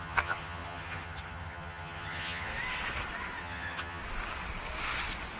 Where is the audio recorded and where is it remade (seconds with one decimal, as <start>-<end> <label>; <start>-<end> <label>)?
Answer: 0.0-2.5 remade; 2.5-3.4 recorded; 3.4-4.0 remade; 4.0-5.4 recorded